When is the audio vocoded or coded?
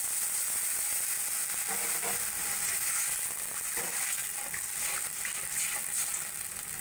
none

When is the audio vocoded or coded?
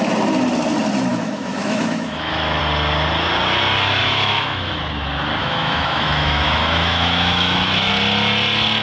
1.1-2.6 (autoencoder, DAC-VAE); 4.0-4.7; 5.4-7.9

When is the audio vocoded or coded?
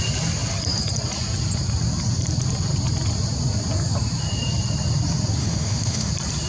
5.4-6.1 (autoencoder, DAC-VAE)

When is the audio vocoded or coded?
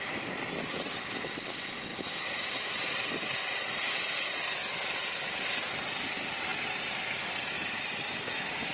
none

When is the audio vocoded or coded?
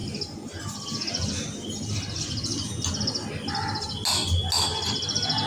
none